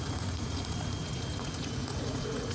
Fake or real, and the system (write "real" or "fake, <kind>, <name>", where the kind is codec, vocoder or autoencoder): fake, vocoder, Vocos